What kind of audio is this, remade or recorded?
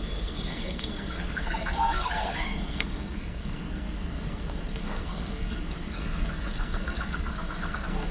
remade